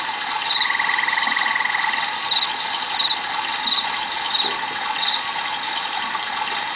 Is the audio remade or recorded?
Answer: recorded